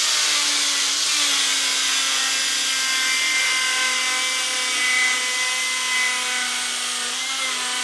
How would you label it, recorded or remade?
recorded